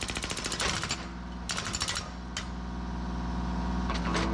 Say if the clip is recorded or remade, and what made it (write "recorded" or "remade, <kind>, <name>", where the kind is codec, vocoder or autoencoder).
recorded